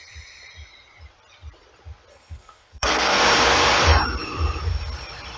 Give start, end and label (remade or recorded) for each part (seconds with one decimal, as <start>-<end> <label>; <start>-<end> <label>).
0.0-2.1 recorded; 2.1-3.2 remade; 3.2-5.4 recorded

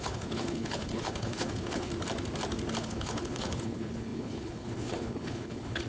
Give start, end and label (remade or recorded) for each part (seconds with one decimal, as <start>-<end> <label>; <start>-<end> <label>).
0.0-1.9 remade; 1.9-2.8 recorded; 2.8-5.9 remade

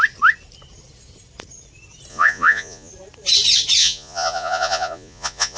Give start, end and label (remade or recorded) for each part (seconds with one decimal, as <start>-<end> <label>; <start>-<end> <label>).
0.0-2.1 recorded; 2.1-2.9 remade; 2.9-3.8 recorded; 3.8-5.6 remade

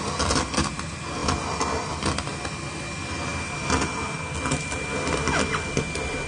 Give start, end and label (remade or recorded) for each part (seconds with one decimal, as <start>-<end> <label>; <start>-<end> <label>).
0.0-6.3 recorded

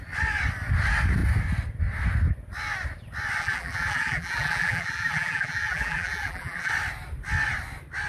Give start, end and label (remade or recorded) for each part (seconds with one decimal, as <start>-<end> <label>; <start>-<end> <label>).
0.0-3.4 recorded; 3.4-6.7 remade; 6.7-8.1 recorded

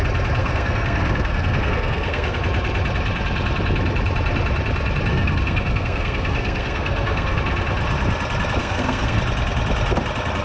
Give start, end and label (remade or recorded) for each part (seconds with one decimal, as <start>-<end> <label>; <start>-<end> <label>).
0.0-0.4 recorded; 0.4-2.4 remade; 2.4-5.1 recorded; 5.1-7.4 remade; 7.4-8.6 recorded; 8.6-9.2 remade; 9.2-10.4 recorded